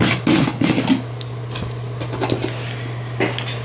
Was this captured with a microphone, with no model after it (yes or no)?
yes